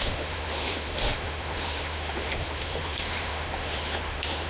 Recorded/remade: remade